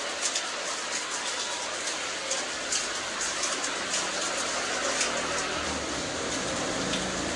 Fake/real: real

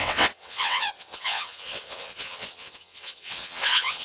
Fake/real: fake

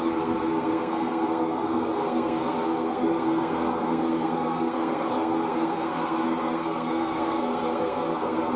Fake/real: fake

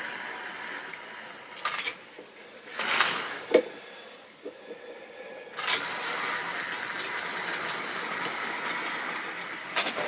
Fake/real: real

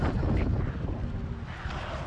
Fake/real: real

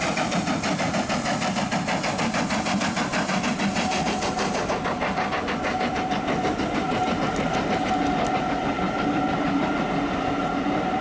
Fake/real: fake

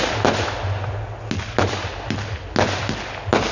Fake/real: real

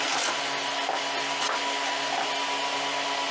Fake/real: real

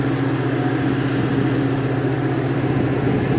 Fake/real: real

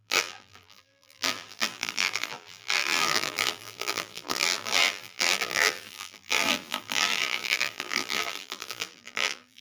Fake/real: fake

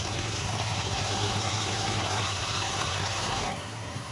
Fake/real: fake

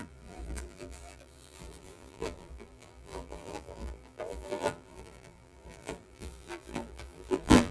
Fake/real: fake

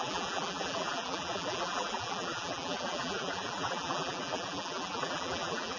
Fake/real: fake